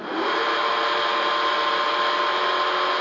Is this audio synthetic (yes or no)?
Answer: no